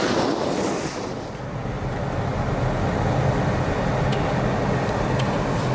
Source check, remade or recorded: recorded